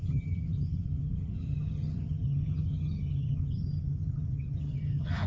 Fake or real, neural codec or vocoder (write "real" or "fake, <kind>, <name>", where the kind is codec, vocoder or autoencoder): fake, vocoder, HiFi-GAN